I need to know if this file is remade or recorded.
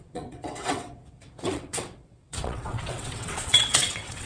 remade